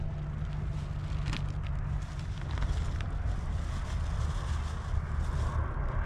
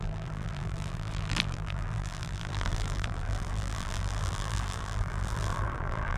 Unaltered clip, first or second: first